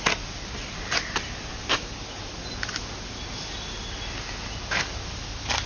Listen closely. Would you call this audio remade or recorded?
recorded